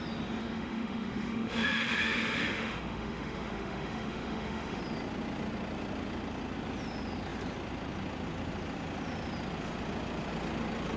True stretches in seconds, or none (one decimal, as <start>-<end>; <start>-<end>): 0.0-0.4; 4.8-11.0